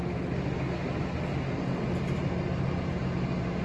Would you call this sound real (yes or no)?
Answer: yes